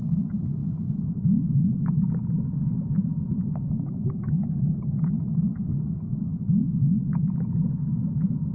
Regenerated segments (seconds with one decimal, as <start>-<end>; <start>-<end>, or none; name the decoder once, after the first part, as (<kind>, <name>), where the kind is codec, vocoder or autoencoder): 0.0-0.6 (codec, DAC); 1.5-6.3; 7.2-8.5